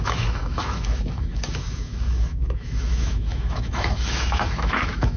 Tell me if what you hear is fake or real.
fake